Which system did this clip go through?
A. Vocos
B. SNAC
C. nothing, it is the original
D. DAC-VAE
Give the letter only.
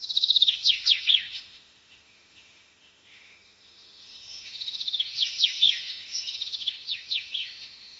D